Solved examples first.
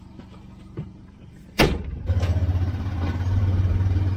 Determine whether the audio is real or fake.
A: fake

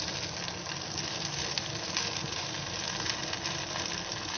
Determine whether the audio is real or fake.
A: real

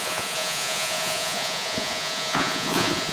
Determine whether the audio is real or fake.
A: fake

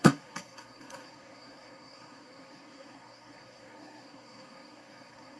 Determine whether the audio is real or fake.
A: fake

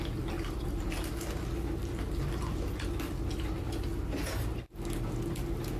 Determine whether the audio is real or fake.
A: real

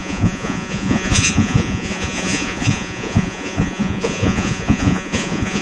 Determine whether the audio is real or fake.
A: fake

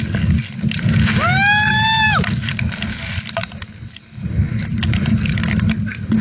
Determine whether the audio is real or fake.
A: real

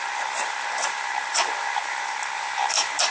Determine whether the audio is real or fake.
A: fake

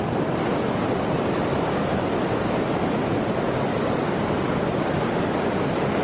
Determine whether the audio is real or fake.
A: real